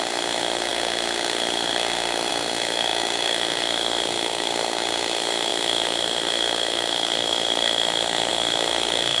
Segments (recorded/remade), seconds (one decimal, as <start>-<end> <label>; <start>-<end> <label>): 0.0-9.2 remade